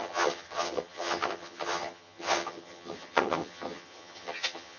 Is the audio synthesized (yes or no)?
yes